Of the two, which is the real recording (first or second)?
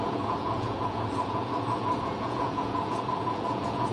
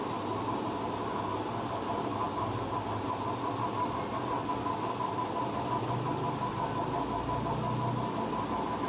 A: second